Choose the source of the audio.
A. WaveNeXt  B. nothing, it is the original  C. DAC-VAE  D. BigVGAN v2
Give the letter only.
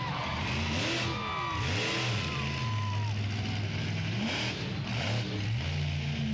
B